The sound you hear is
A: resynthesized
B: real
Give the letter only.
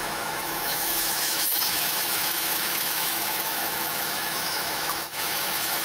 A